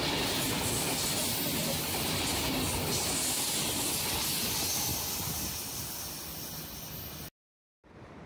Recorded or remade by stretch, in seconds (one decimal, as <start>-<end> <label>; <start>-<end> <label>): 0.0-8.3 recorded